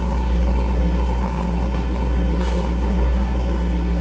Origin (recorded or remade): remade